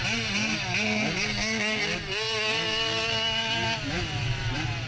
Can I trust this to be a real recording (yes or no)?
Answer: yes